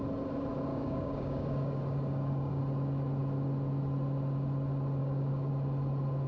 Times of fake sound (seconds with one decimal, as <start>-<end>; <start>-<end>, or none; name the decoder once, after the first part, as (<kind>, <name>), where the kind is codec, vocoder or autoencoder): 0.7-2.6 (codec, DAC); 5.0-5.5